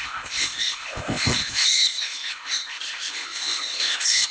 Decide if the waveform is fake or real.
fake